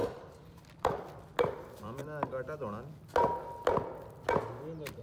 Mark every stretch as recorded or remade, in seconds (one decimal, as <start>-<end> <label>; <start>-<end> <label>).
0.0-0.8 recorded; 0.8-2.0 remade; 2.0-4.5 recorded; 4.5-5.0 remade